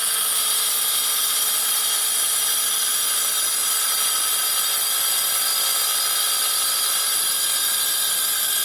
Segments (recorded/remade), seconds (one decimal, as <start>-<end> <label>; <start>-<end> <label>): 0.0-8.6 recorded